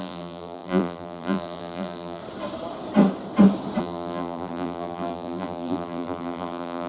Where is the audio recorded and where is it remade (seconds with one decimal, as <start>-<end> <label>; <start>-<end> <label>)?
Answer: 0.0-2.2 remade; 2.2-3.8 recorded; 3.8-6.9 remade